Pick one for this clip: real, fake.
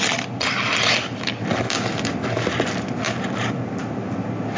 real